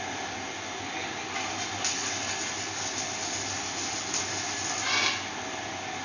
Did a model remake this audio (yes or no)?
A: no